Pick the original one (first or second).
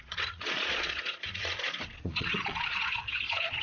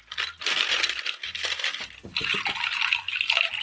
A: second